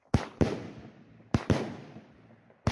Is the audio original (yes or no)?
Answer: yes